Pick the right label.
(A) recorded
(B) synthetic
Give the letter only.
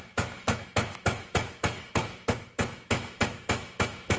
B